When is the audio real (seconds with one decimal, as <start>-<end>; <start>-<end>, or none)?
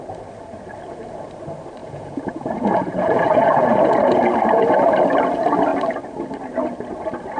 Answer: 0.0-1.8; 4.2-7.4